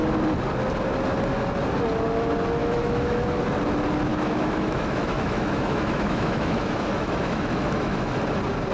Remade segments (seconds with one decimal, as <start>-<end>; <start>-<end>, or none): 2.6-3.4; 4.1-8.2